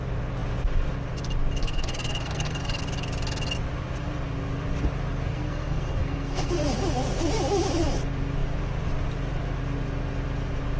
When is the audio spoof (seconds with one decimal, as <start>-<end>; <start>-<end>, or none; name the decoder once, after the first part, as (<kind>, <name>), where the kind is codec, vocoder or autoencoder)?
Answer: 1.6-2.8 (codec, SNAC); 5.3-6.5